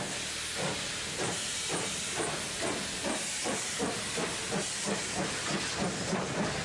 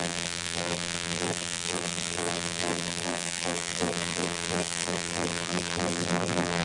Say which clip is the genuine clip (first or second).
first